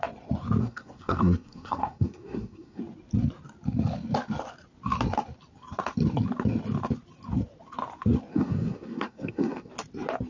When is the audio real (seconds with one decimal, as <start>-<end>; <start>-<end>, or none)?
0.0-0.6; 2.8-8.3; 9.7-10.3